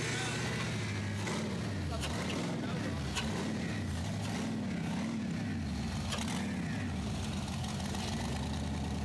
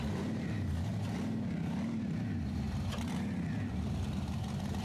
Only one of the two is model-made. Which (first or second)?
second